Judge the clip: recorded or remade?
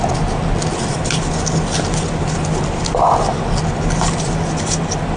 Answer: recorded